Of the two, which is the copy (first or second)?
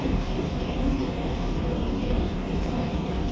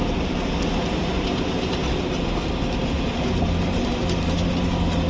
first